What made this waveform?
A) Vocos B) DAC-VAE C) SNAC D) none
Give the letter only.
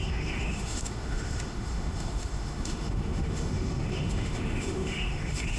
B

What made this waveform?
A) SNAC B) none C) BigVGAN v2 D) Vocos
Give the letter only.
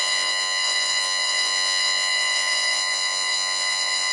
D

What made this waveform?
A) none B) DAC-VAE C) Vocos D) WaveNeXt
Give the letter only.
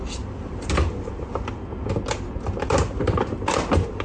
A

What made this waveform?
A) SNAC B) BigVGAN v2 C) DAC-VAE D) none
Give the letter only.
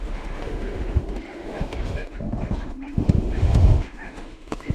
C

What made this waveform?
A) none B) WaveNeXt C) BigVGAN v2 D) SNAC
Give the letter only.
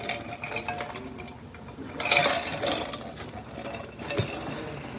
A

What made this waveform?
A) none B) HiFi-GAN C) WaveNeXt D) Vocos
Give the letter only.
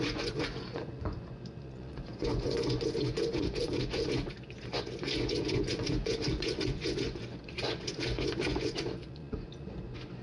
D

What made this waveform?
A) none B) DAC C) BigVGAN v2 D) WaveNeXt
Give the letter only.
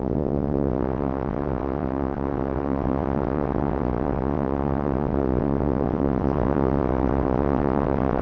D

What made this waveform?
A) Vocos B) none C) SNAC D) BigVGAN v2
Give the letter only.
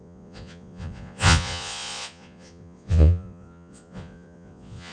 A